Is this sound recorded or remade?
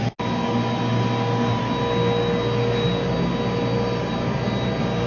recorded